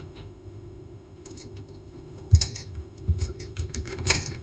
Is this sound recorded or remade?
remade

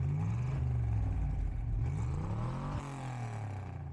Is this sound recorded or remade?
recorded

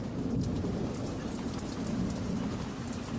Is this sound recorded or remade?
recorded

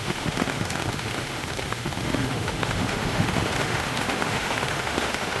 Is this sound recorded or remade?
remade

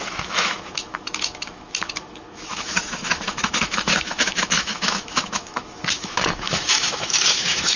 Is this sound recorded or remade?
remade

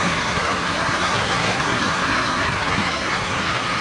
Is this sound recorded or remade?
remade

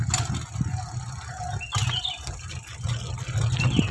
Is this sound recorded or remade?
recorded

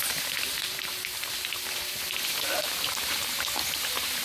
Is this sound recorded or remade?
remade